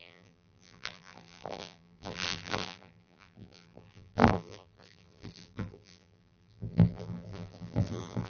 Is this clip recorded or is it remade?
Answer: remade